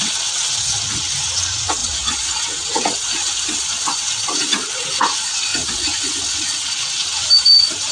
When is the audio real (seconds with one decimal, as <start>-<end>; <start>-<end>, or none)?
none